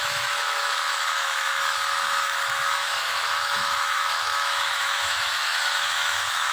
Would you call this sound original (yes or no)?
no